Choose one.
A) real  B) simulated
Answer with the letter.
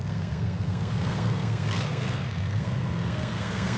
B